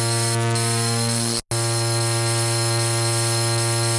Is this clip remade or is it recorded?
recorded